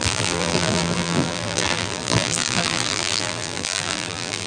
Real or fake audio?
fake